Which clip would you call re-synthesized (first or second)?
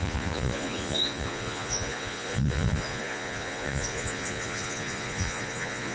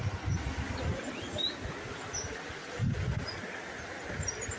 first